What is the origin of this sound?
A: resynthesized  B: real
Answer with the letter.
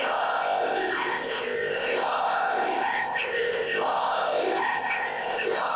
A